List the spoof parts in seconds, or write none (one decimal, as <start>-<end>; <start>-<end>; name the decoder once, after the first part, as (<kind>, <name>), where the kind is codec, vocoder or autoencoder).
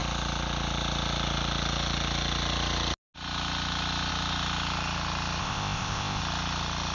5.4-6.2 (codec, ZipCodec)